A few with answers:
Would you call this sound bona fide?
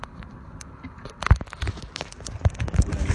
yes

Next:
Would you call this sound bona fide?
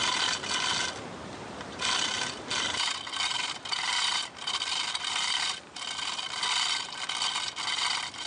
yes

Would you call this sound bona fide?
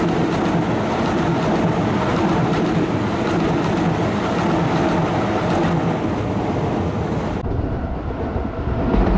yes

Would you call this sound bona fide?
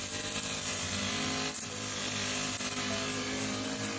yes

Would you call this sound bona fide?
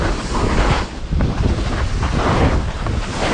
yes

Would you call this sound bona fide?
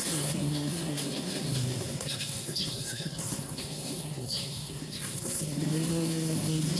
no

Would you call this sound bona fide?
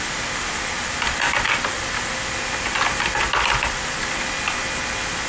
yes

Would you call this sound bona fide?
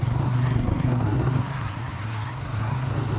no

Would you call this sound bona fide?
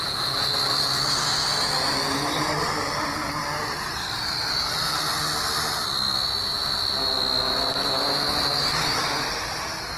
yes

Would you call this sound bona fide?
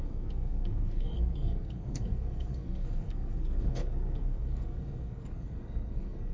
no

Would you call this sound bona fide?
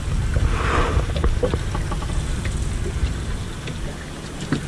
yes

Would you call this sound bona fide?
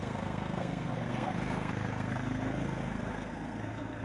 no